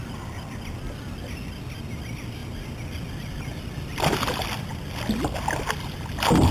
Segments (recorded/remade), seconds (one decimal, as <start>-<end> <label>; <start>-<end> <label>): 0.0-6.5 recorded

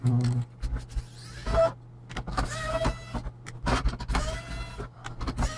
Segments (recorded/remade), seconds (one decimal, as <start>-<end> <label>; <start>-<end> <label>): 0.0-5.6 recorded